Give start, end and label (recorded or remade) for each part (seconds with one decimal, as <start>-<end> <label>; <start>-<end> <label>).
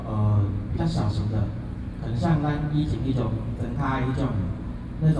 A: 0.0-5.2 recorded